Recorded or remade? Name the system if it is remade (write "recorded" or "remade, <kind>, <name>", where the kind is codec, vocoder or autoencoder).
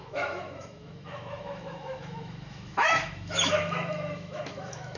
remade, autoencoder, DAC-VAE